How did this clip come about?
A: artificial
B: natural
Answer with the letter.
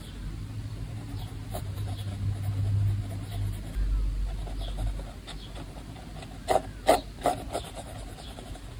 B